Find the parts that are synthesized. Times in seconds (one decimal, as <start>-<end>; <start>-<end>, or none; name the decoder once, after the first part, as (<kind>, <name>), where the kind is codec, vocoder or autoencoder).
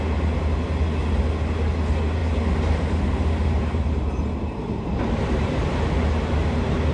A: 2.2-5.6 (vocoder, BigVGAN v2)